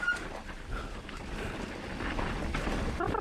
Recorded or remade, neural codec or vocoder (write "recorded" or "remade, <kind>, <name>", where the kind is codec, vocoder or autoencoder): recorded